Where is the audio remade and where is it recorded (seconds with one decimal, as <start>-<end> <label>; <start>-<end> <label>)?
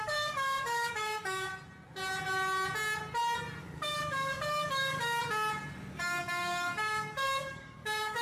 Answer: 0.0-1.5 remade; 1.5-3.6 recorded; 3.6-5.2 remade; 5.2-6.0 recorded; 6.0-8.2 remade